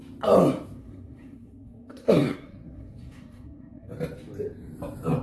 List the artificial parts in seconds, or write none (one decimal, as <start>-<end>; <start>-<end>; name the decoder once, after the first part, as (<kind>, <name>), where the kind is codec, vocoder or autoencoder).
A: 0.8-3.9 (codec, SNAC)